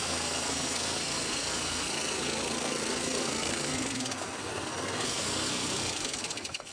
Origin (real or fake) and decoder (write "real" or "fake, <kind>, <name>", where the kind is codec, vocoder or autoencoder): fake, codec, SNAC